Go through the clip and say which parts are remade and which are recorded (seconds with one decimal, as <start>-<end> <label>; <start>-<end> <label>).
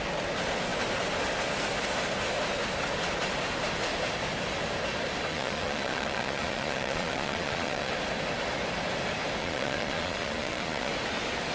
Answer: 0.0-5.3 recorded; 5.3-7.9 remade; 7.9-9.4 recorded; 9.4-10.9 remade; 10.9-11.5 recorded